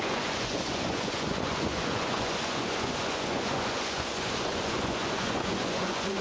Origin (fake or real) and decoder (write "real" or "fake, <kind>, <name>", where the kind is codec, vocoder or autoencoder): fake, vocoder, Vocos